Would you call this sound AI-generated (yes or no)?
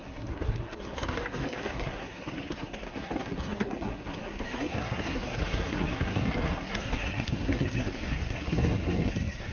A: yes